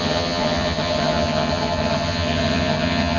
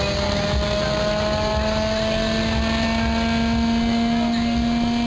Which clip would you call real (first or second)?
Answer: second